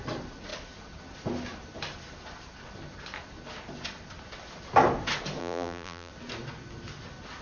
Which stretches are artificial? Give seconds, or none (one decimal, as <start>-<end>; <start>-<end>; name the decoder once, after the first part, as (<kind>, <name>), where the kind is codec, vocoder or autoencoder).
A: 5.4-6.1 (vocoder, BigVGAN v2)